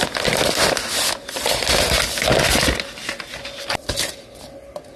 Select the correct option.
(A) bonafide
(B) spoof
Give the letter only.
A